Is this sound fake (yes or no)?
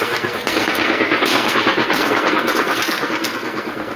yes